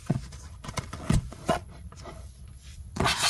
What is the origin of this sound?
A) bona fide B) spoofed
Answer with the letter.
B